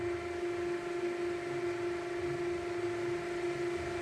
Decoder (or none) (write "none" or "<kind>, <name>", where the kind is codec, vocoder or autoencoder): none